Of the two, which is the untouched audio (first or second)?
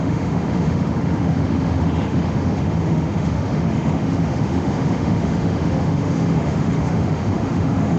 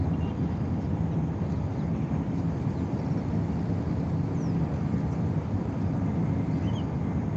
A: second